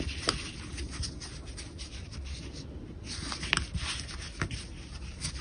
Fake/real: real